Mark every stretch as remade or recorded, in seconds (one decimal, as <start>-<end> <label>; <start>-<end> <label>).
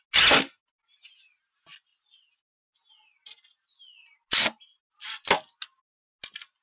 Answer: 0.0-6.6 recorded